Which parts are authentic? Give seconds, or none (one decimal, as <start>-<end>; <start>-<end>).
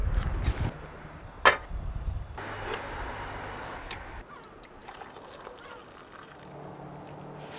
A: 0.0-7.6